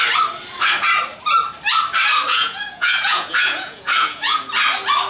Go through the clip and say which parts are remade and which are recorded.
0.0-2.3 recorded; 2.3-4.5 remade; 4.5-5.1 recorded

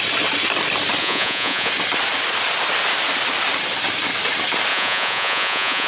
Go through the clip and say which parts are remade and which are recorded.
0.0-1.0 recorded; 1.0-1.7 remade; 1.7-4.7 recorded; 4.7-5.9 remade

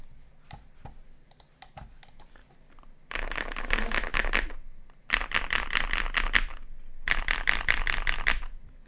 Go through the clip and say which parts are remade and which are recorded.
0.0-8.9 recorded

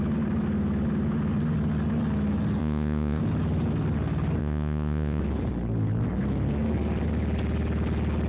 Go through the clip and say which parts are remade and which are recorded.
0.0-2.6 recorded; 2.6-3.2 remade; 3.2-4.4 recorded; 4.4-5.2 remade; 5.2-8.3 recorded

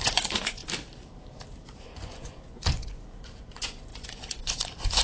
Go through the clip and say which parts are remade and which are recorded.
0.0-0.6 remade; 0.6-1.8 recorded; 1.8-5.0 remade

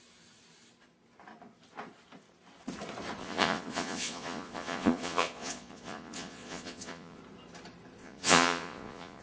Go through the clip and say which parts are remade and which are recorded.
0.0-3.2 recorded; 3.2-7.2 remade; 7.2-8.0 recorded; 8.0-9.2 remade

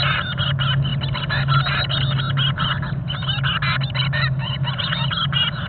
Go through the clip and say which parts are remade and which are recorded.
0.0-5.7 recorded

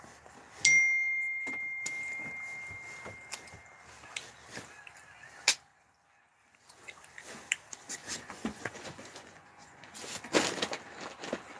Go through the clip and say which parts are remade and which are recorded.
0.0-8.0 recorded; 8.0-10.1 remade; 10.1-11.6 recorded